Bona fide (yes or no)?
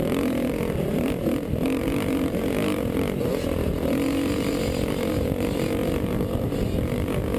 no